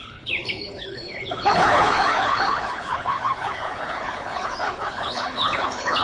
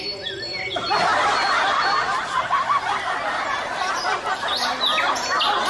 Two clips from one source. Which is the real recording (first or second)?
second